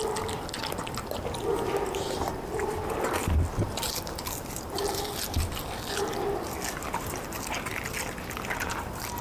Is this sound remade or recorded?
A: recorded